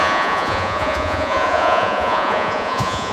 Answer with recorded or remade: remade